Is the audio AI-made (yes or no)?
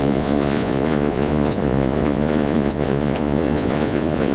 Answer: yes